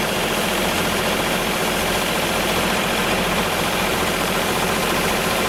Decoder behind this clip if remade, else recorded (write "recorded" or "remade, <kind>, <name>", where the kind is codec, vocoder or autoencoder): remade, vocoder, BigVGAN v2